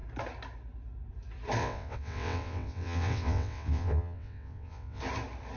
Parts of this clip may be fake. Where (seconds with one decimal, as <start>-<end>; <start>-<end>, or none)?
1.6-5.0